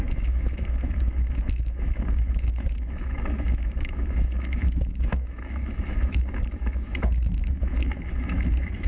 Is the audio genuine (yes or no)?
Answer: no